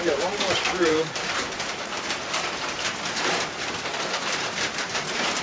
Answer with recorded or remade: remade